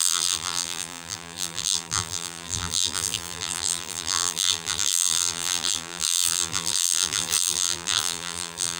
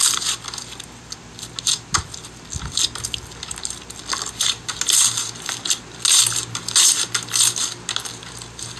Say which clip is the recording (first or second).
second